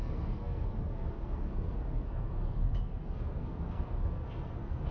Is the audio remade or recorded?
remade